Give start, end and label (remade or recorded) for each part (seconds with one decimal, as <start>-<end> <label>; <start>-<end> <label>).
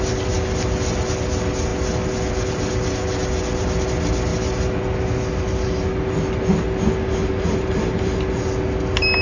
0.0-9.2 recorded